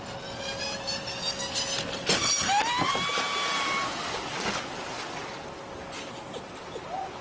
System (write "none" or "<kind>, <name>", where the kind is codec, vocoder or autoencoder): none